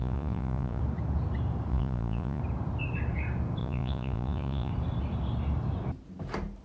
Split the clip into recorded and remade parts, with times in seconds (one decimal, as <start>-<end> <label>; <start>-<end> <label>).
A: 0.0-0.8 remade; 0.8-1.7 recorded; 1.7-2.4 remade; 2.4-3.6 recorded; 3.6-4.7 remade; 4.7-6.6 recorded